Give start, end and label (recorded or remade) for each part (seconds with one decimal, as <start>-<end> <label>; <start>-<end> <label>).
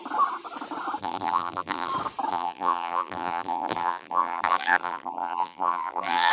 0.0-1.0 recorded; 1.0-1.9 remade; 1.9-2.3 recorded; 2.3-6.3 remade